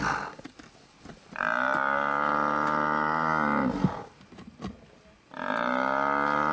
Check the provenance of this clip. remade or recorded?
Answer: recorded